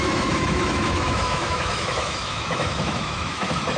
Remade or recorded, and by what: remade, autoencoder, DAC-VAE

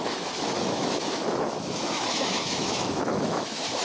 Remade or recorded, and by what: remade, autoencoder, DAC-VAE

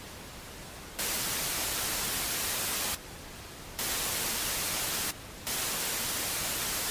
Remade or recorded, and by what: recorded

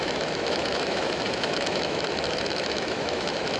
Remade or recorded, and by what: remade, autoencoder, DAC-VAE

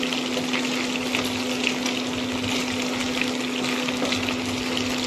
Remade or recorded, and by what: recorded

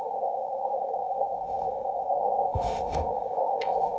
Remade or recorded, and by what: remade, autoencoder, DAC-VAE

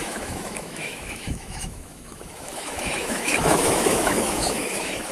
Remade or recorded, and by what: remade, autoencoder, DAC-VAE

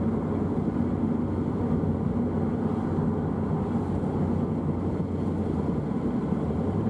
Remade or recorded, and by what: recorded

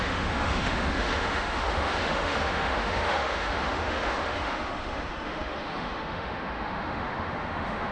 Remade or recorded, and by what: remade, autoencoder, DAC-VAE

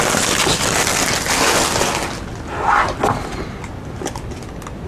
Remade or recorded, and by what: recorded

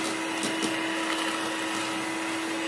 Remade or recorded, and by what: recorded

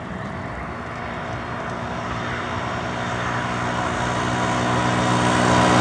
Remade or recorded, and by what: recorded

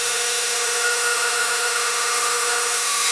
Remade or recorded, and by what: remade, autoencoder, DAC-VAE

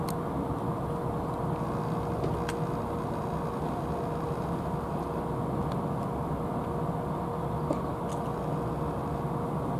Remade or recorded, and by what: recorded